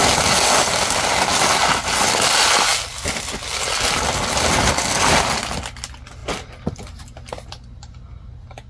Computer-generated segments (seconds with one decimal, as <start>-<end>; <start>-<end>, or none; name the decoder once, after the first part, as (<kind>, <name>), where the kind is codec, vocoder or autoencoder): none